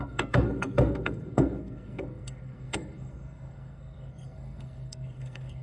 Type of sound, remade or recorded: remade